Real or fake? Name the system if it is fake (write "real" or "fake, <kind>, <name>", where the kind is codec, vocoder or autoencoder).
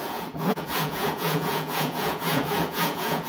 fake, vocoder, Vocos